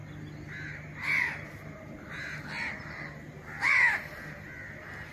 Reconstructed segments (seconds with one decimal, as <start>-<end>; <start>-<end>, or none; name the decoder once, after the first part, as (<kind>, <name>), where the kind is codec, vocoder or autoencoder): none